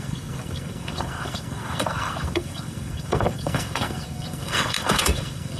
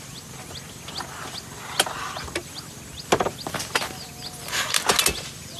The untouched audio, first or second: second